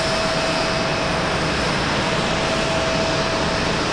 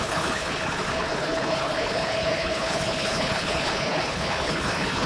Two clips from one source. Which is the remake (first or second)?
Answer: second